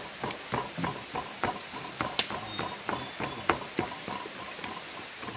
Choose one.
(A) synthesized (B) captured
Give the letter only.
B